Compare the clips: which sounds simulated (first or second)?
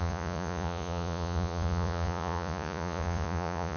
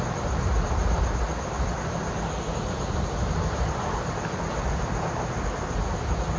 first